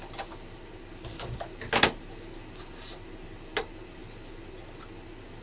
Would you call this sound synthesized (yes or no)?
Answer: no